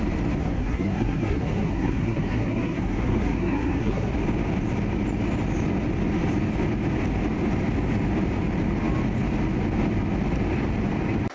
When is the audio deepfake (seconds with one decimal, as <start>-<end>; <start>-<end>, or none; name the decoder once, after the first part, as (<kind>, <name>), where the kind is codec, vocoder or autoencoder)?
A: 0.4-4.1 (codec, SNAC)

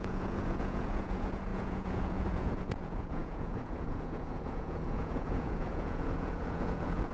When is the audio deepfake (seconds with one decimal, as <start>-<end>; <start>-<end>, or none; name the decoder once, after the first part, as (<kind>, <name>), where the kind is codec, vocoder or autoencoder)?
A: 0.0-7.1 (vocoder, Vocos)

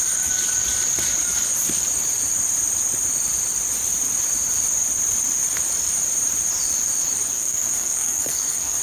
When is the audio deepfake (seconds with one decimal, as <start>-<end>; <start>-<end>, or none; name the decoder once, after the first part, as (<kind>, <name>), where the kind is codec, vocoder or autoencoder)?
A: 7.3-8.8 (codec, SNAC)